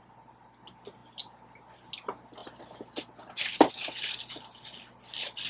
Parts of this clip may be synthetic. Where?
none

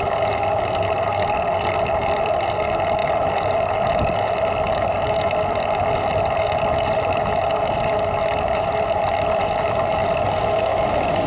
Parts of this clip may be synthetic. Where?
none

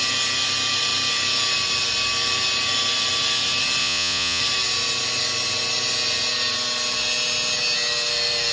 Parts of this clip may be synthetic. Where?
3.8-4.4 (vocoder, Vocos)

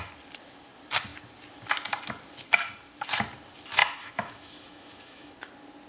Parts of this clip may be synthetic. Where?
3.8-5.3 (autoencoder, DAC-VAE)

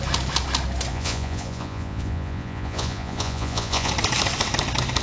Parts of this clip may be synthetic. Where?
0.9-3.9 (vocoder, Vocos)

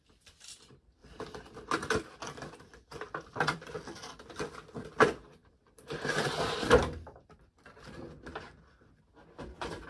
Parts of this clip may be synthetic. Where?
2.9-4.0 (vocoder, BigVGAN v2); 5.4-6.1

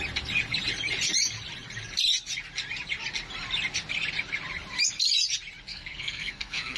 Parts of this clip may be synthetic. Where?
5.7-6.8 (codec, SNAC)

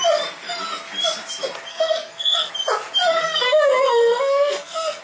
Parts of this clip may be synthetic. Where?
1.7-2.5 (codec, SNAC); 3.2-5.0